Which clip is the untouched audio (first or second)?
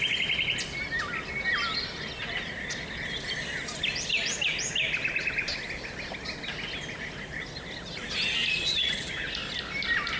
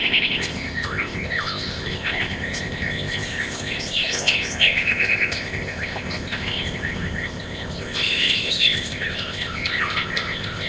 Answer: first